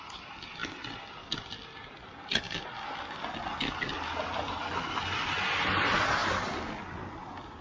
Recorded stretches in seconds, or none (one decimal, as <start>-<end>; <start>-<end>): 0.0-7.6